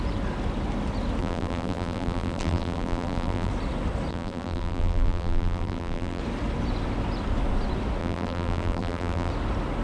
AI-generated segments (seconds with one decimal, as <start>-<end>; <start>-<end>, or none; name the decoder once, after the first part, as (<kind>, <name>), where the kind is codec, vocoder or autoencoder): 1.2-3.5 (vocoder, BigVGAN v2); 4.1-6.2; 8.0-9.3